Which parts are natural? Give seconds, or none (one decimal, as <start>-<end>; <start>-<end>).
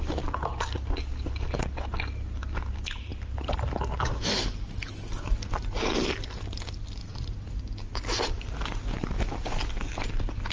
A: 0.0-7.0; 7.6-10.5